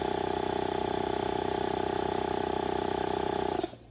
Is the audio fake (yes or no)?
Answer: no